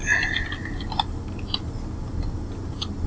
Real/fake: real